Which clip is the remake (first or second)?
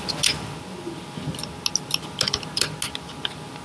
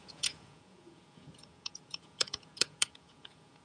second